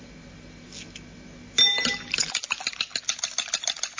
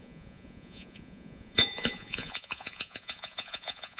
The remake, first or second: second